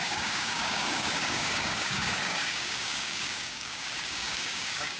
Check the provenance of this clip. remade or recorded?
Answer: remade